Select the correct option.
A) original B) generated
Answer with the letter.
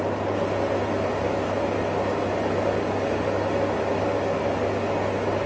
A